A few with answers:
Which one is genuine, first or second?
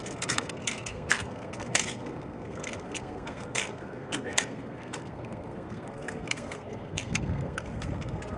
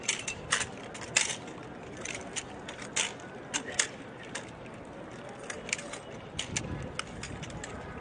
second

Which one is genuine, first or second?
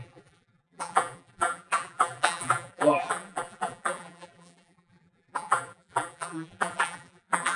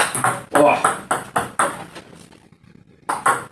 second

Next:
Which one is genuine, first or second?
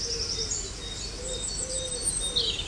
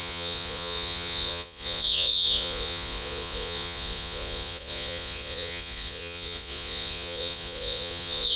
first